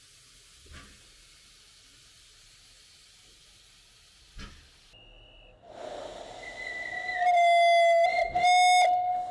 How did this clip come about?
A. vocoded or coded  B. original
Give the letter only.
B